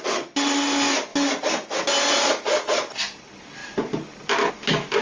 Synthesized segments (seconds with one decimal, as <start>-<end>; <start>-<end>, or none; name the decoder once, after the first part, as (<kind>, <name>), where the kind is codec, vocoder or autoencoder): none